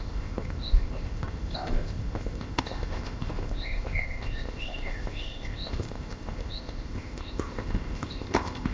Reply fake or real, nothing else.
fake